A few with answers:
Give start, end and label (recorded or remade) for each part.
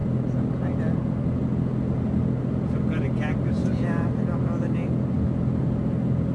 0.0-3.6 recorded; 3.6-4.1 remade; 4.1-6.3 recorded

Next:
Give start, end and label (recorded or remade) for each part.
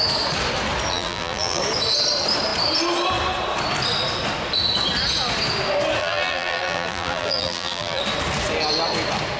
0.0-0.9 recorded; 0.9-1.6 remade; 1.6-6.0 recorded; 6.0-8.0 remade; 8.0-9.4 recorded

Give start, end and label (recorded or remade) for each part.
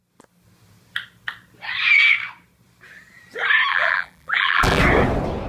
0.0-3.7 recorded; 3.7-4.8 remade; 4.8-5.5 recorded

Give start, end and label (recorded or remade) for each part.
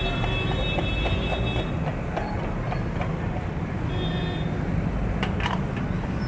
0.0-6.3 recorded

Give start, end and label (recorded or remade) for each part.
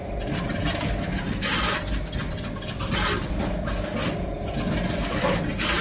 0.0-5.8 recorded